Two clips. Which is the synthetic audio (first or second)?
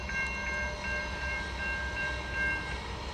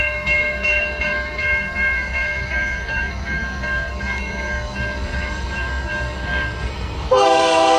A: second